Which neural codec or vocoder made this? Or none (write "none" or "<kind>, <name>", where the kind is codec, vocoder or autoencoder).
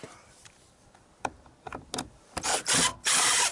none